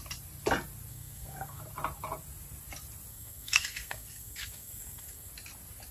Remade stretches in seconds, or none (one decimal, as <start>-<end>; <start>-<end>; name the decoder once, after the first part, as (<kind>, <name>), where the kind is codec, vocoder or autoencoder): 0.9-1.6 (codec, SNAC); 3.1-5.3